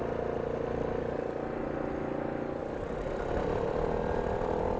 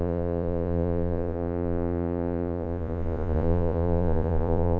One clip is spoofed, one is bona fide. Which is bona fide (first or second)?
first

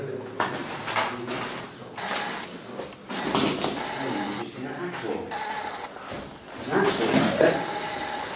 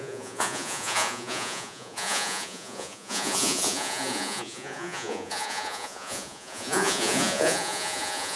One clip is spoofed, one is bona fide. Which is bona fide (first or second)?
first